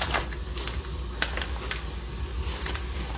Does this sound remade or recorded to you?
recorded